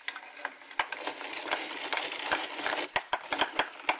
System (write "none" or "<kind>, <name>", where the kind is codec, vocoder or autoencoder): none